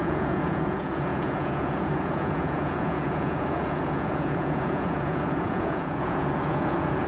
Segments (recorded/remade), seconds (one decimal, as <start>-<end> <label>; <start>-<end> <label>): 0.0-7.1 remade